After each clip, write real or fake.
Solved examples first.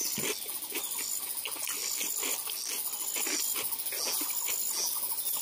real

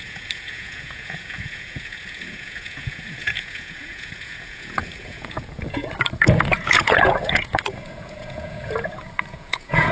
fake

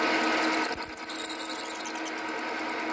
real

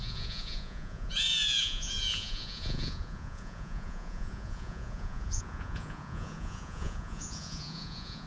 fake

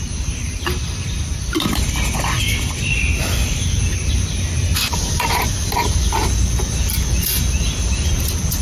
real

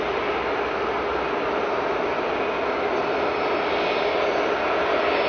real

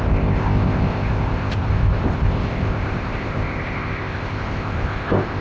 fake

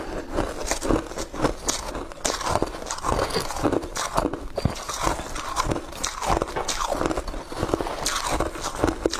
real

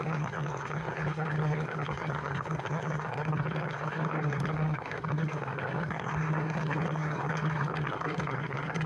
fake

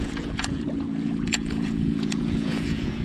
fake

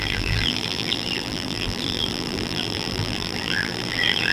fake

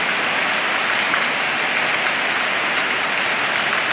real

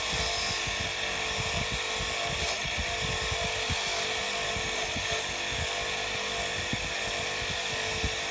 real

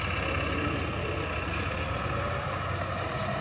real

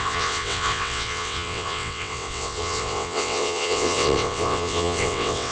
fake